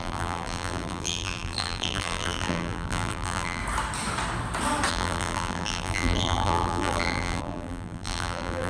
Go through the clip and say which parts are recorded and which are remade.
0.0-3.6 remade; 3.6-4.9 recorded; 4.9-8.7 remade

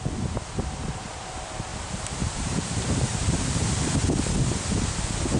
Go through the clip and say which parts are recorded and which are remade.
0.0-1.7 recorded; 1.7-4.0 remade; 4.0-5.4 recorded

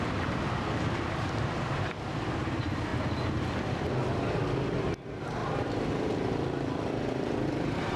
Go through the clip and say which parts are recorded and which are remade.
0.0-5.4 remade; 5.4-6.5 recorded; 6.5-8.0 remade